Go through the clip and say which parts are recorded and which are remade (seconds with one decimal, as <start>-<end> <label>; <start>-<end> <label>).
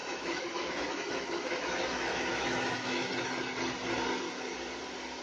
0.0-3.1 remade; 3.1-5.2 recorded